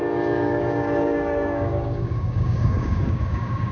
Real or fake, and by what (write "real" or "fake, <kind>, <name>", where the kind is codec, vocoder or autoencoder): fake, codec, DAC